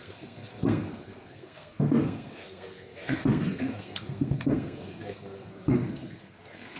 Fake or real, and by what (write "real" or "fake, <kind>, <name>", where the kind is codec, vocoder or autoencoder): fake, codec, SNAC